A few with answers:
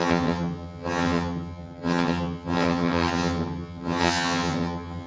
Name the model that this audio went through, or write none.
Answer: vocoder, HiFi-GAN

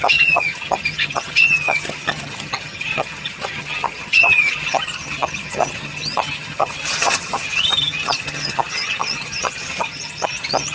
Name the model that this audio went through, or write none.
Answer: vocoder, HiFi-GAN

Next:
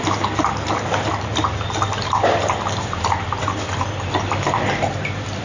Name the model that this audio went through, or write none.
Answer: none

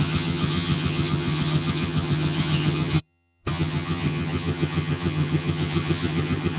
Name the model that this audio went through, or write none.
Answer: vocoder, HiFi-GAN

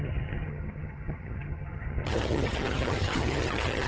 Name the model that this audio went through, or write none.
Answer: vocoder, HiFi-GAN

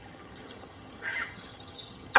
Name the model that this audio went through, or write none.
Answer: vocoder, HiFi-GAN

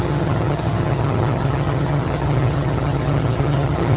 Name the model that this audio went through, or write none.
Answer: vocoder, HiFi-GAN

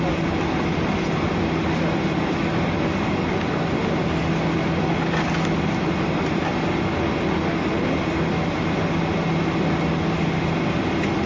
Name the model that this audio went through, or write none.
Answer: none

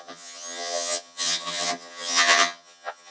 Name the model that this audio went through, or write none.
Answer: vocoder, HiFi-GAN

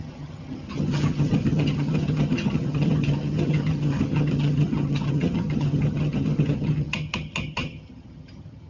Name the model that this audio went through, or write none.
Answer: vocoder, HiFi-GAN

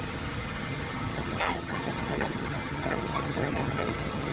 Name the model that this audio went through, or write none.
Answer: vocoder, HiFi-GAN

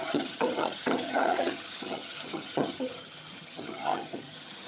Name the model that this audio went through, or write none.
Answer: vocoder, HiFi-GAN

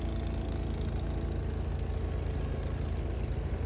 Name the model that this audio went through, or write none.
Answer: none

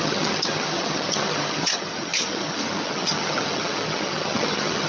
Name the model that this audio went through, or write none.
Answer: vocoder, HiFi-GAN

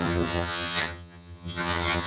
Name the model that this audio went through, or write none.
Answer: vocoder, HiFi-GAN